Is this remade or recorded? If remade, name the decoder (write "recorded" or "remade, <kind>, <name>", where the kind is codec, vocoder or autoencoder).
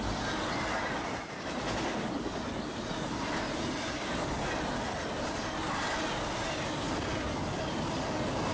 recorded